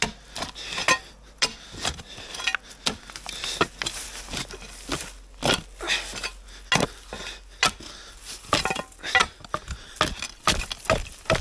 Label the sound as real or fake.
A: real